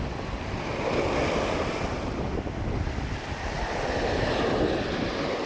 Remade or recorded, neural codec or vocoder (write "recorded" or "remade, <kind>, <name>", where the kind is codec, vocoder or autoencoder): recorded